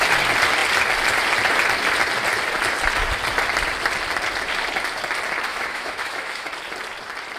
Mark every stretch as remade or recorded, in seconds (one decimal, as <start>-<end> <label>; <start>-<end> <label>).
0.0-5.5 recorded; 5.5-6.5 remade; 6.5-7.4 recorded